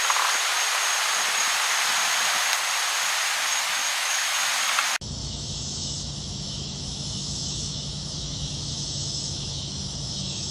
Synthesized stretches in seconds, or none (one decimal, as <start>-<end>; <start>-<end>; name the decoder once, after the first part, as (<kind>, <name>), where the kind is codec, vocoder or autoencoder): 3.8-4.4 (autoencoder, DAC-VAE); 5.2-10.5

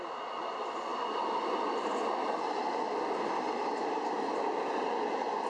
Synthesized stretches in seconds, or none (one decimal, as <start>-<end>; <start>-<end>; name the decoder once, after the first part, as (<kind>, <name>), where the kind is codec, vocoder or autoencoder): none

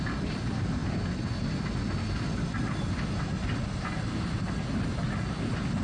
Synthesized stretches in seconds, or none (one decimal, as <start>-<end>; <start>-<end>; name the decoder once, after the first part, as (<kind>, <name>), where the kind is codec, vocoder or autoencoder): none

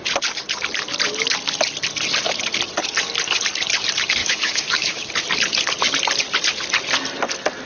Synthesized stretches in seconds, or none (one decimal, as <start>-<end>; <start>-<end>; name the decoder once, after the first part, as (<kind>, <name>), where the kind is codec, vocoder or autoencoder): 4.2-5.1 (autoencoder, DAC-VAE)

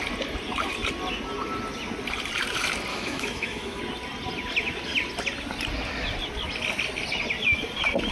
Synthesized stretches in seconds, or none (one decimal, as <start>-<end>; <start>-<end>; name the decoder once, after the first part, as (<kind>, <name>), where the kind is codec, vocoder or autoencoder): 2.9-3.8 (autoencoder, DAC-VAE)

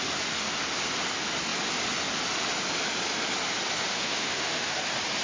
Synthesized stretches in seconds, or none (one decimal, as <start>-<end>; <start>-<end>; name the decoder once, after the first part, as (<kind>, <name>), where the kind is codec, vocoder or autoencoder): 3.9-4.8 (autoencoder, DAC-VAE)

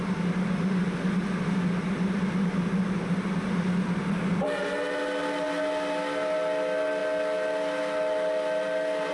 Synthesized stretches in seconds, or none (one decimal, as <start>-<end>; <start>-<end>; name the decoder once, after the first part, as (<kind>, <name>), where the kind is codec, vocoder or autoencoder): none